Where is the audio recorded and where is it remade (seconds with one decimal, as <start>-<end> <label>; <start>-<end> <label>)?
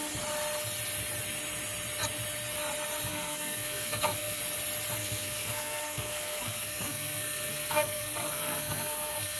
0.0-3.1 recorded; 3.1-4.4 remade; 4.4-5.0 recorded; 5.0-9.4 remade